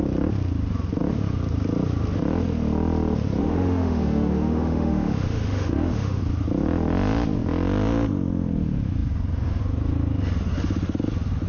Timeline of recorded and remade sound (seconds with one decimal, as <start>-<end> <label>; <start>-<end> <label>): 0.0-3.4 recorded; 3.4-6.2 remade; 6.2-11.5 recorded